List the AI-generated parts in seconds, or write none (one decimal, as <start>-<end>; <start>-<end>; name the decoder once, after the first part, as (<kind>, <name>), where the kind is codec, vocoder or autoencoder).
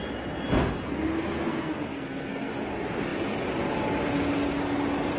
1.5-2.5 (codec, SNAC)